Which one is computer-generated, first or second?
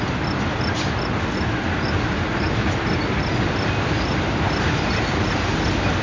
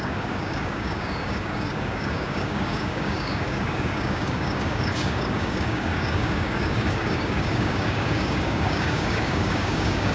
second